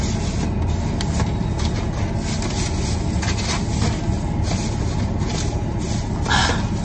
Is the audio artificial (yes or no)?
no